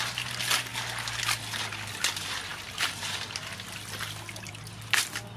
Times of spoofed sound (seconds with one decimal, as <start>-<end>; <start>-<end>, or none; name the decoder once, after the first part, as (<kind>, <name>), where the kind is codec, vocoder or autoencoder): none

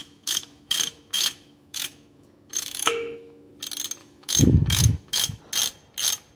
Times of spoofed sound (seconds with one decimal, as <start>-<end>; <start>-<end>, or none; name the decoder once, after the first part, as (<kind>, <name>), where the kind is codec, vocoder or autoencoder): 0.0-3.5 (autoencoder, DAC-VAE); 4.0-5.4

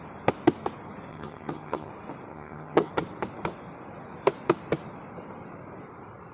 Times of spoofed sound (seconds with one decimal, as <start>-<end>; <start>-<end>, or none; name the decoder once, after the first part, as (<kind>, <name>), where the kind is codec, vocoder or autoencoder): 1.1-1.9 (vocoder, HiFi-GAN); 2.3-2.9

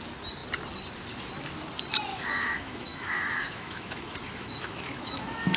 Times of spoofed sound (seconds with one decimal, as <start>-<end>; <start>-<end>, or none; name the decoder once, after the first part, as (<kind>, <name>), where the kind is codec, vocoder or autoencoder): 2.1-5.6 (autoencoder, DAC-VAE)

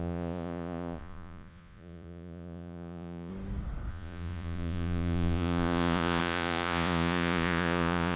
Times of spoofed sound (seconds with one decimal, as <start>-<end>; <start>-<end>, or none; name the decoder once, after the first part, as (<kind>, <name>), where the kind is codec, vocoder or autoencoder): 0.0-3.3 (vocoder, Vocos); 3.9-8.2